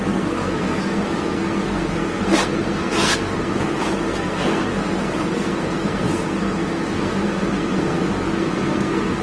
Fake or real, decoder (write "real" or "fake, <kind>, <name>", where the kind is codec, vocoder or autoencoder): fake, codec, SNAC